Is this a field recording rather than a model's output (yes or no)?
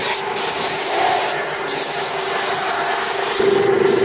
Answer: yes